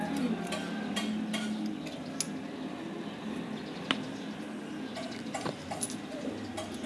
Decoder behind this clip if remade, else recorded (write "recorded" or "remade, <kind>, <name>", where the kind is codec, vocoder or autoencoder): recorded